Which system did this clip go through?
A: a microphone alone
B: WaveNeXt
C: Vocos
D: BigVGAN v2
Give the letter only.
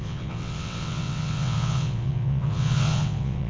B